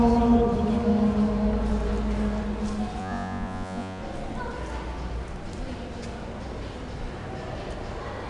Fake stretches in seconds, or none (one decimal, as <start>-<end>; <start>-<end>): 3.0-4.0

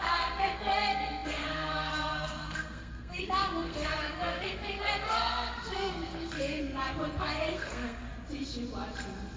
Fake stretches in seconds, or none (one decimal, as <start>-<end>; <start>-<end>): 0.0-6.6; 7.2-8.1

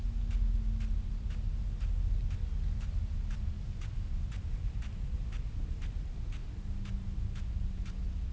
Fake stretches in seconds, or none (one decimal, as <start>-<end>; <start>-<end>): none

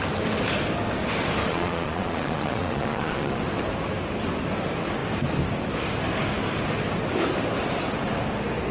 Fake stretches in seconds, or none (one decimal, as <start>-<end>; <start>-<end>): 1.5-3.4

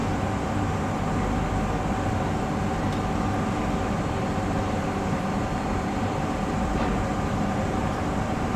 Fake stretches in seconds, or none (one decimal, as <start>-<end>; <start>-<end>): 5.1-8.6

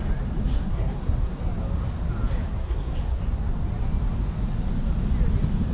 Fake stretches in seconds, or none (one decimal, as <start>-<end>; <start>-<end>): 0.4-1.4; 2.6-3.2